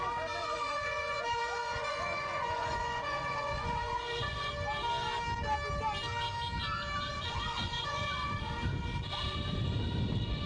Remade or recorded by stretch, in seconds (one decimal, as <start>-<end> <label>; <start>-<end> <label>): 0.0-0.4 recorded; 0.4-4.5 remade; 4.5-7.1 recorded; 7.1-8.4 remade; 8.4-10.5 recorded

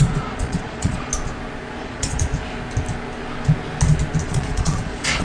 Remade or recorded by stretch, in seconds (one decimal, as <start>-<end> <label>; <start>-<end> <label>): 0.0-1.1 remade; 1.1-1.8 recorded; 1.8-2.3 remade; 2.3-4.2 recorded; 4.2-5.2 remade

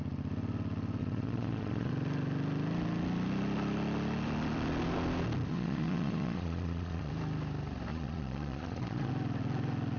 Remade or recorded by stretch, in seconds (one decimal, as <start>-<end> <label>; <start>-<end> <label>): 0.0-1.0 recorded; 1.0-1.9 remade; 1.9-5.5 recorded; 5.5-7.1 remade; 7.1-7.9 recorded; 7.9-9.1 remade; 9.1-10.0 recorded